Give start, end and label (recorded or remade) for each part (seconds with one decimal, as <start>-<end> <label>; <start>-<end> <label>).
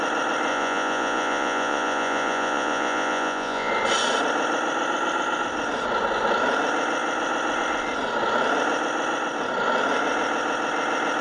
0.0-0.5 recorded; 0.5-3.7 remade; 3.7-11.2 recorded